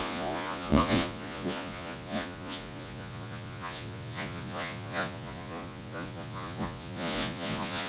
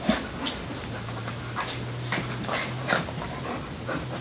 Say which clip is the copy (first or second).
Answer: first